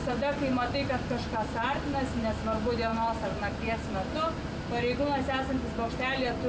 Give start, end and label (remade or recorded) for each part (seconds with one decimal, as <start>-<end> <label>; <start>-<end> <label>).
0.0-6.5 recorded